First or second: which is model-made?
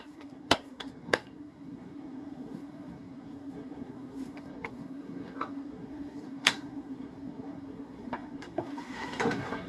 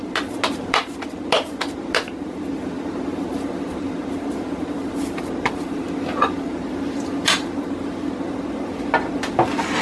first